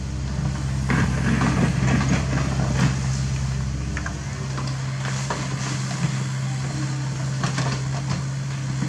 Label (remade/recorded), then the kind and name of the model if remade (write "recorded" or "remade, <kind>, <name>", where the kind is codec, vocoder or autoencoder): recorded